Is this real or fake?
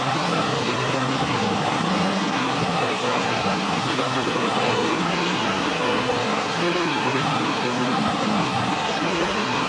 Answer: fake